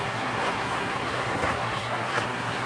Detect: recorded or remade remade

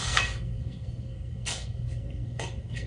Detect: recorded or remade remade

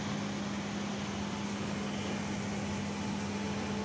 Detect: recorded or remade recorded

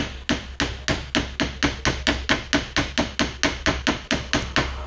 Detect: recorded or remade recorded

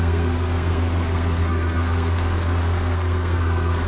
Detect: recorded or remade remade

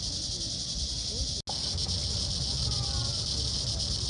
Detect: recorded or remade recorded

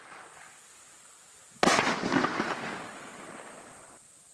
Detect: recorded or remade recorded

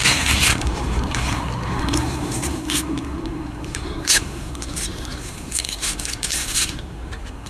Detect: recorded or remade remade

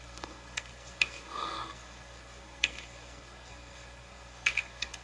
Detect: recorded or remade remade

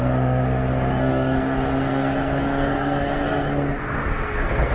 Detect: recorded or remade remade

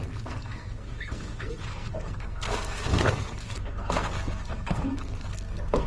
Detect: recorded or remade remade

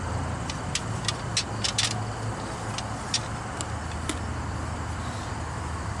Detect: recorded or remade recorded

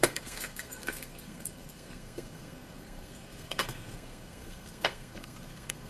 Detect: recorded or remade remade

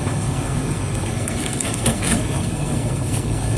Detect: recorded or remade remade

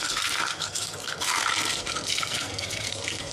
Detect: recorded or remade remade